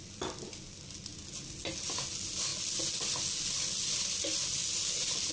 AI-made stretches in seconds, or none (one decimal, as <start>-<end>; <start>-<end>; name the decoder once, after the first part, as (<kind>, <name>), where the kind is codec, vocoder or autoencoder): none